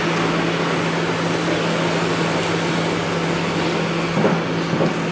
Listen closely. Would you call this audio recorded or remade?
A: recorded